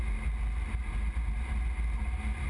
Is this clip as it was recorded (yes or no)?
yes